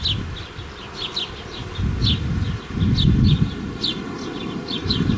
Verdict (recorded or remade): recorded